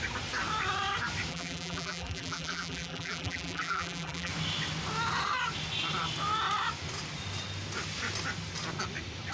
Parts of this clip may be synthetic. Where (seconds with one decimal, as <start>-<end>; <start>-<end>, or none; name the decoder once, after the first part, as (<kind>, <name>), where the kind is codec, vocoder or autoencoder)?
1.3-4.3 (vocoder, BigVGAN v2)